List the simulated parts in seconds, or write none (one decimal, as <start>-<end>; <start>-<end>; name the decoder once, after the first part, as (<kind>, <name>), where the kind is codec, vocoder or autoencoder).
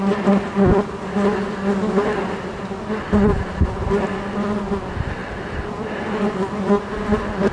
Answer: 3.3-4.0 (vocoder, BigVGAN v2); 5.2-5.8